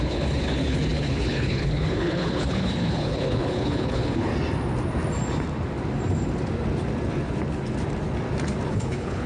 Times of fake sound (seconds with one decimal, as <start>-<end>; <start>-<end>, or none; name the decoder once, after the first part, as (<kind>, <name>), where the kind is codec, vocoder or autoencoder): 0.0-4.3 (codec, HILCodec); 8.7-9.3